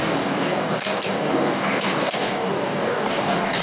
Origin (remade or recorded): remade